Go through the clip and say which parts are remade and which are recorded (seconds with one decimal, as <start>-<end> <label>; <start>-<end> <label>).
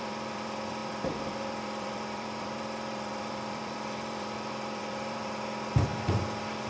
0.0-5.9 remade; 5.9-6.7 recorded